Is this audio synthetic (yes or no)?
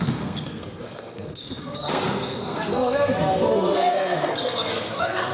yes